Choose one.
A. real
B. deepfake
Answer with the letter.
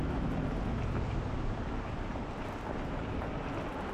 A